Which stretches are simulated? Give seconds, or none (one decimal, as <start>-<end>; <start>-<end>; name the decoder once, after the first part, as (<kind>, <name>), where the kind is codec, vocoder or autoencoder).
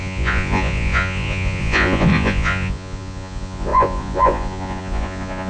0.0-5.5 (vocoder, Vocos)